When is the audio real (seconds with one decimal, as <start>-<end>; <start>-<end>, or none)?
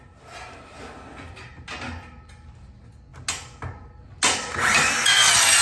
0.0-5.6